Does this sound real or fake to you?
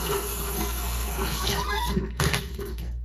fake